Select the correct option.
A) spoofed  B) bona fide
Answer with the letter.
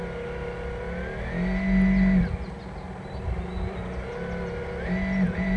B